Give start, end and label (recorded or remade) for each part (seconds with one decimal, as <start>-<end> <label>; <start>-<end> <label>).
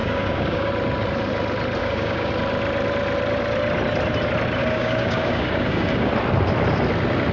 0.0-0.7 remade; 0.7-1.8 recorded; 1.8-2.3 remade; 2.3-4.6 recorded; 4.6-6.1 remade; 6.1-7.3 recorded